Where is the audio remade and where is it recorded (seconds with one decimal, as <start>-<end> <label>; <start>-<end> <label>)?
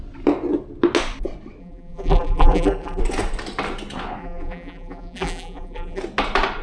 0.0-1.6 recorded; 1.6-3.0 remade; 3.0-4.2 recorded; 4.2-6.0 remade; 6.0-6.6 recorded